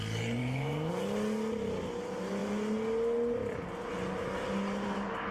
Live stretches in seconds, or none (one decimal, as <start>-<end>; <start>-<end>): 0.0-0.4; 0.9-5.3